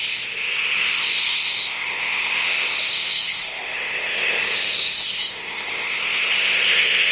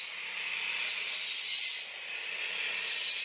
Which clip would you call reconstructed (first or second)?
first